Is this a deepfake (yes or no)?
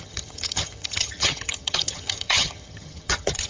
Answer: yes